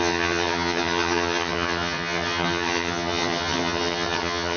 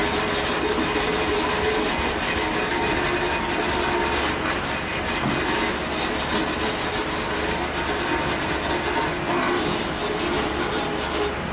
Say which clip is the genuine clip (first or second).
second